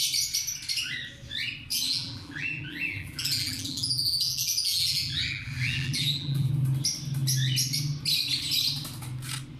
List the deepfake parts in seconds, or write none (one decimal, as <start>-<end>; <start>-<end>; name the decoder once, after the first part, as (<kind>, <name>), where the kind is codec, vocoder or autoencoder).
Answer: 1.7-6.5 (vocoder, BigVGAN v2)